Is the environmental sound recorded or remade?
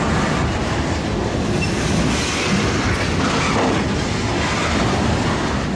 recorded